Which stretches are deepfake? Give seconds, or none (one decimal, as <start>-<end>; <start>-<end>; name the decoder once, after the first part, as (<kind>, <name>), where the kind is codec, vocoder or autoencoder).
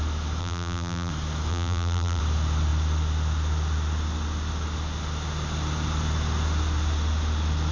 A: 0.4-1.1 (vocoder, BigVGAN v2); 1.5-2.2